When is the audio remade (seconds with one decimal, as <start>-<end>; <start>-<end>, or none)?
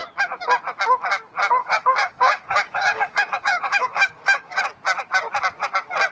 1.6-4.6